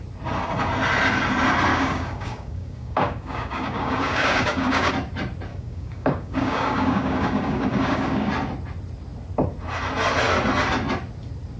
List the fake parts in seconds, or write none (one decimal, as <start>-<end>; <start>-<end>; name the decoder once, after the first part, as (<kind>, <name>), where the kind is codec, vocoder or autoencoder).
1.7-4.9 (codec, DAC); 5.5-8.3